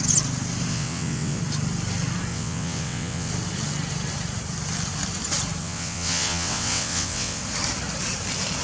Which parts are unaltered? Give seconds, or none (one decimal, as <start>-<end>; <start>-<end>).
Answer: 0.0-0.7; 1.4-2.3; 3.3-5.6; 7.4-8.6